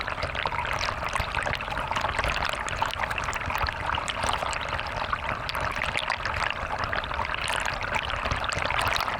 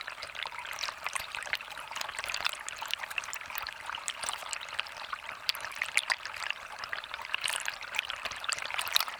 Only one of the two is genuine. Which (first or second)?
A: first